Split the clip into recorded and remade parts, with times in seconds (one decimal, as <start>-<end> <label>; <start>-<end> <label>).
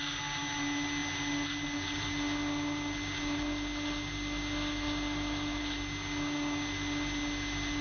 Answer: 0.0-7.8 recorded